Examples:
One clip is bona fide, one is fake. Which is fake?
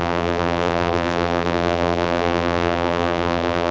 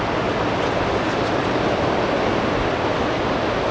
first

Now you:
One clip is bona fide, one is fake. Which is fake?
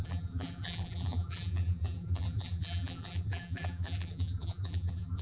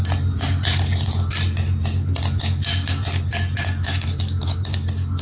first